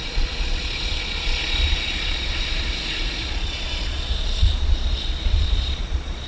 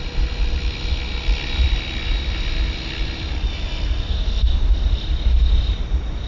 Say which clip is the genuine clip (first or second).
second